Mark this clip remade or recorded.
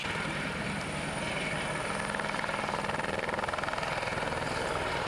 recorded